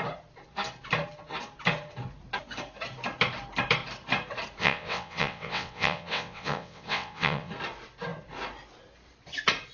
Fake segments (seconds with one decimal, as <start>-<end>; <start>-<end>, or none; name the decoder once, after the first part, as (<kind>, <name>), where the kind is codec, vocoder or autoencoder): 4.6-7.5 (vocoder, WaveNeXt)

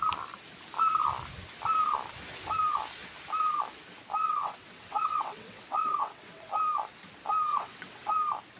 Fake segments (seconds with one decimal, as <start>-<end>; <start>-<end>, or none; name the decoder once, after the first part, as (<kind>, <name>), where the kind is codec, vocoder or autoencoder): 4.2-6.5 (vocoder, WaveNeXt); 7.5-8.1